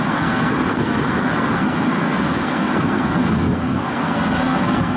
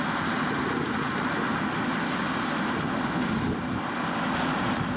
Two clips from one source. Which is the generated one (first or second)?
first